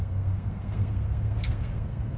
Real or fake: fake